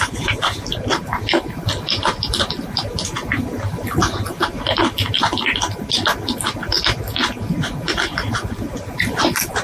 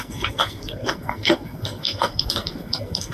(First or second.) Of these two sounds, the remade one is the second